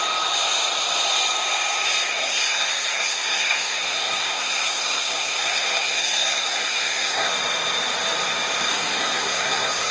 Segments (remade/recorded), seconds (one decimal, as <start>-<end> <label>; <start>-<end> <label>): 0.0-2.1 recorded; 2.1-7.3 remade; 7.3-8.7 recorded; 8.7-9.9 remade